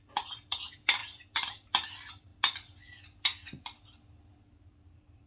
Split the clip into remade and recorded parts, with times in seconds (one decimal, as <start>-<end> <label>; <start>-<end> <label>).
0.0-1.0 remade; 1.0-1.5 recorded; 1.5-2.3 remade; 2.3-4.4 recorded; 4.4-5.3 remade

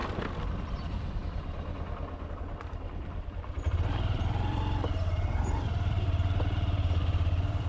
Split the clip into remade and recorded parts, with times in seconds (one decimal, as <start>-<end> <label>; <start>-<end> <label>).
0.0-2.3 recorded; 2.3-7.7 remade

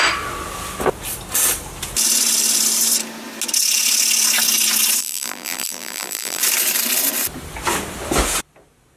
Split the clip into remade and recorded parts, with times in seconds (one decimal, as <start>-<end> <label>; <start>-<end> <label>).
0.0-5.0 recorded; 5.0-6.4 remade; 6.4-9.0 recorded